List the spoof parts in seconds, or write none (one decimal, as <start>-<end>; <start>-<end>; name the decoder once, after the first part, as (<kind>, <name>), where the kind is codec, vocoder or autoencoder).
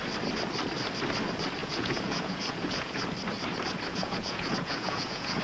1.6-3.0 (vocoder, Vocos); 3.9-5.4